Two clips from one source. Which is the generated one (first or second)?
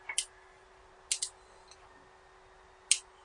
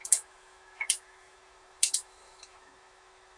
second